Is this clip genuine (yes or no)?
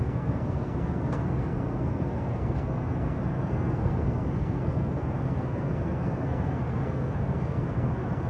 no